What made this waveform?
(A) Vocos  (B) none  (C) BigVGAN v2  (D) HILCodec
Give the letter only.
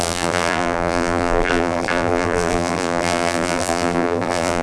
C